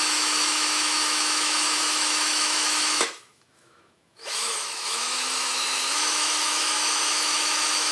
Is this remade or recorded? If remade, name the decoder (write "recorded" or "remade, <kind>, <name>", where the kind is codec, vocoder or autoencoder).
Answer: remade, autoencoder, DAC-VAE